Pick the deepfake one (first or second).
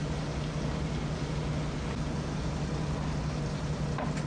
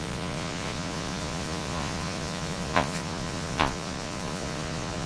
second